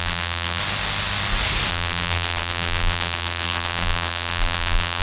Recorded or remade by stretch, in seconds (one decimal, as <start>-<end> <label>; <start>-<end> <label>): 0.0-0.6 remade; 0.6-1.7 recorded; 1.7-5.0 remade